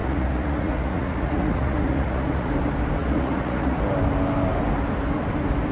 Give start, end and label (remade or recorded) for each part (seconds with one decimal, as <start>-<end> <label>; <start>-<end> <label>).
0.0-2.5 remade; 2.5-3.0 recorded; 3.0-3.8 remade; 3.8-5.7 recorded